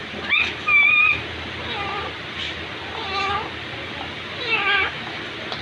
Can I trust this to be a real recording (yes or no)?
yes